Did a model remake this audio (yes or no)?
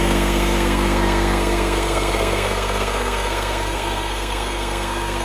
yes